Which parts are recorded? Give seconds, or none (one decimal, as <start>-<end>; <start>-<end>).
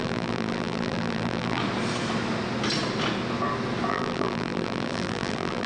1.6-3.9